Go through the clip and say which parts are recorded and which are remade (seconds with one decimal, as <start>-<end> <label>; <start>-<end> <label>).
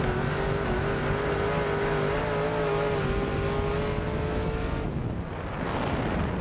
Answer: 0.0-6.4 recorded